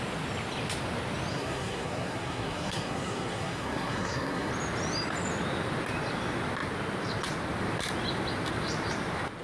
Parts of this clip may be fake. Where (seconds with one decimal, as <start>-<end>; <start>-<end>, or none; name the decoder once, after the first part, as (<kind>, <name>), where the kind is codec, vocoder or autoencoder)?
1.3-4.5 (codec, SNAC)